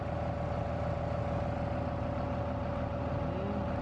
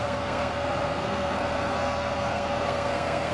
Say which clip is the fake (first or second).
second